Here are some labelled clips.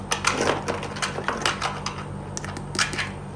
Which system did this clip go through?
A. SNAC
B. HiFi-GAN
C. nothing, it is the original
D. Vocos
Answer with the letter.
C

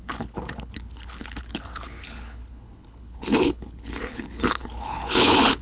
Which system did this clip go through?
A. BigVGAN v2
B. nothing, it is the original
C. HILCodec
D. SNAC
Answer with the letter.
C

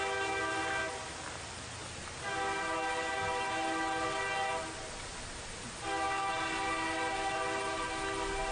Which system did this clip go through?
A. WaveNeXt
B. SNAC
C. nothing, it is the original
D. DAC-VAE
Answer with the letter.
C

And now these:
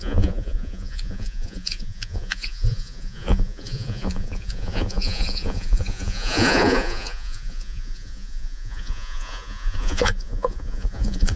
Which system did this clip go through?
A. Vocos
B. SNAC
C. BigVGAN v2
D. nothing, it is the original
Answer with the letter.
A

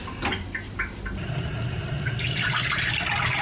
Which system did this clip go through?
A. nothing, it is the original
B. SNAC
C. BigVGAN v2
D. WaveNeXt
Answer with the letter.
A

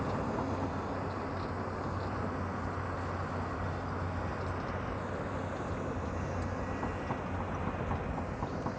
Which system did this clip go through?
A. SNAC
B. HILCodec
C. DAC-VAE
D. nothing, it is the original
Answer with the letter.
D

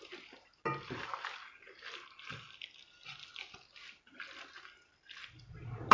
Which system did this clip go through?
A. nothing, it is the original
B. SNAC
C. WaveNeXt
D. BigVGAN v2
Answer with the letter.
A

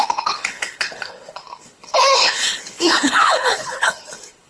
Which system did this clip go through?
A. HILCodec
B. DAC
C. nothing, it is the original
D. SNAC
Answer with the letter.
A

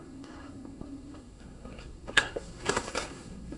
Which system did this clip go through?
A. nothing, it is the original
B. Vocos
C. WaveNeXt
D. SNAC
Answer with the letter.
D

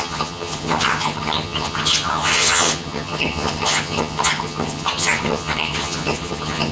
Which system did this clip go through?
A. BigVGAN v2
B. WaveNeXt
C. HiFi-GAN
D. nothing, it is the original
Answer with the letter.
C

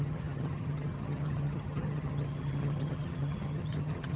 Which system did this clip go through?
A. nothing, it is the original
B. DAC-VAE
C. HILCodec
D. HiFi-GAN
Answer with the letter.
D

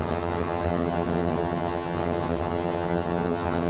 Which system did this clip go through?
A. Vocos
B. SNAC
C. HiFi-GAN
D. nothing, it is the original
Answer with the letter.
C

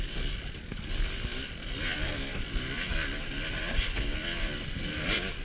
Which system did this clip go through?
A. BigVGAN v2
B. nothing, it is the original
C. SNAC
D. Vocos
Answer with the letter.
B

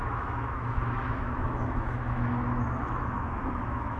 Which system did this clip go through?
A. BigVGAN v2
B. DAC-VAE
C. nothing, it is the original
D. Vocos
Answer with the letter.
B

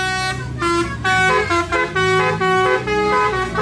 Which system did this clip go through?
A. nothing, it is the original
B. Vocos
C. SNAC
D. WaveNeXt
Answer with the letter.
A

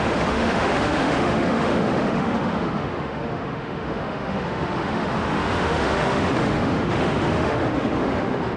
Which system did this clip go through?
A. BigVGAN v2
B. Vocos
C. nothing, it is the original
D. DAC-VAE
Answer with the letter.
D